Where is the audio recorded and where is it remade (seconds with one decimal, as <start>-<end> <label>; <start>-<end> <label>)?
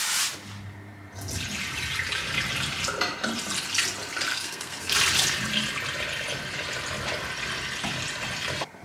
0.0-4.3 recorded; 4.3-4.9 remade; 4.9-8.8 recorded